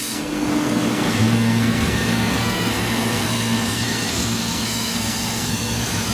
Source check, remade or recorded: remade